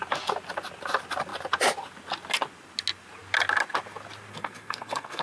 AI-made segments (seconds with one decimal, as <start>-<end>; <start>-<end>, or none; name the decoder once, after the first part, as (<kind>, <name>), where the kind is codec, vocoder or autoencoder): 4.3-5.2 (codec, SNAC)